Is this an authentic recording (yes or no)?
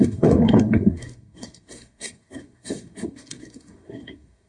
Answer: no